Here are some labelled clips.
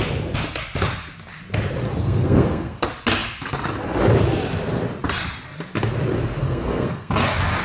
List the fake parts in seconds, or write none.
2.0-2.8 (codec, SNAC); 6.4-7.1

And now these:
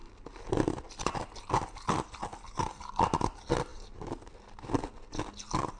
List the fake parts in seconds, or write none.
none

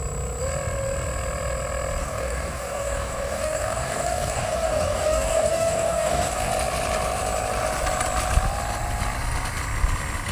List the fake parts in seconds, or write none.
2.0-6.5 (codec, DAC)

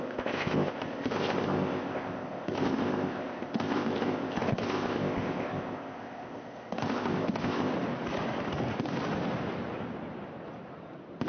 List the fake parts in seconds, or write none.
0.0-7.7 (codec, ZipCodec)

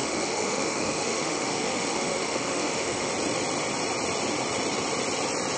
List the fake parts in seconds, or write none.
0.0-3.1 (autoencoder, DAC-VAE)

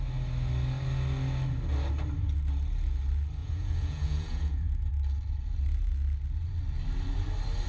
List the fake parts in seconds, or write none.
3.4-4.9 (vocoder, Vocos)

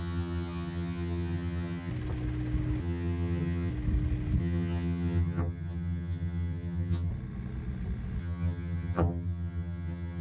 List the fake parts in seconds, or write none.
0.0-1.9 (vocoder, HiFi-GAN); 2.8-3.7; 4.4-7.1; 8.2-10.2